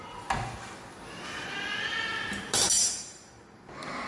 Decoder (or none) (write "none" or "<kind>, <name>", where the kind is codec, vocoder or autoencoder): none